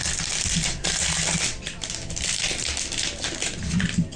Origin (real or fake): real